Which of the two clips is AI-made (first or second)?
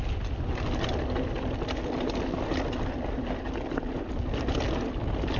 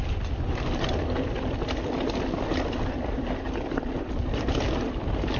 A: second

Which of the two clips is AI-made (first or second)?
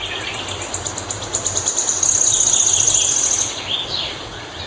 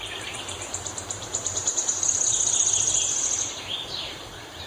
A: second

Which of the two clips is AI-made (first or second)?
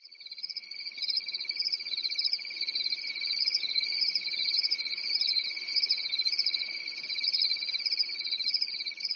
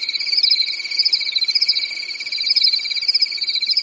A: first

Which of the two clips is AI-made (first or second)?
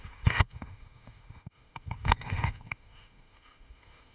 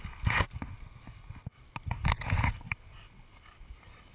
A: first